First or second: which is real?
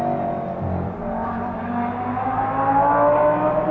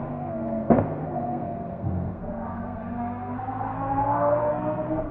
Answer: first